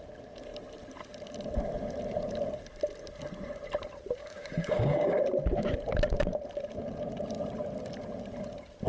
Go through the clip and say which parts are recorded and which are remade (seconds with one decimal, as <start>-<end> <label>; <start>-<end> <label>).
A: 0.0-4.2 recorded; 4.2-5.2 remade; 5.2-8.9 recorded